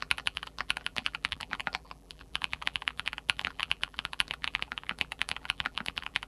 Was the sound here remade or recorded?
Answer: remade